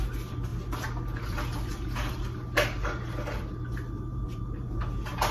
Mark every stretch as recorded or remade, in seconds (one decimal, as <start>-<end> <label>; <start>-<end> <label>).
0.0-4.1 recorded; 4.1-4.8 remade; 4.8-5.3 recorded